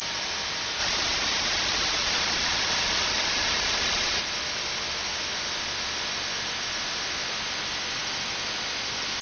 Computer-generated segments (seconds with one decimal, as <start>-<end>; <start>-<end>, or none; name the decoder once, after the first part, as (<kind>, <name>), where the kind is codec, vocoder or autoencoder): 0.8-4.2 (vocoder, BigVGAN v2)